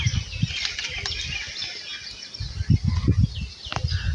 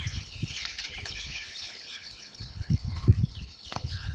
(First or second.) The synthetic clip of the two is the second